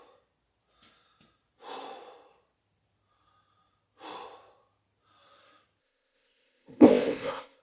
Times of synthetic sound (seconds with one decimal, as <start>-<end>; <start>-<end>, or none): 5.8-7.6